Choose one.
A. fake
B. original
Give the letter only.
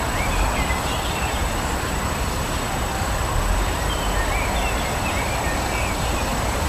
B